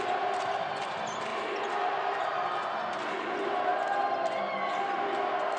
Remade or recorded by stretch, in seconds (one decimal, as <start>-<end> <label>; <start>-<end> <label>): 0.0-5.6 recorded